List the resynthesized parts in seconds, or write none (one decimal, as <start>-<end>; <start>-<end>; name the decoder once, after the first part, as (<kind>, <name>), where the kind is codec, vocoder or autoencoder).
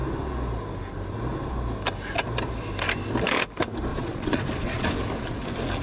3.9-4.9 (vocoder, Vocos)